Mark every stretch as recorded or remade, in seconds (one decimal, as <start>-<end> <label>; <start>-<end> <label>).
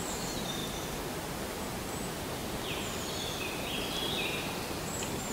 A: 0.0-5.3 recorded